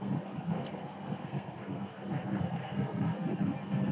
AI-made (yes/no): yes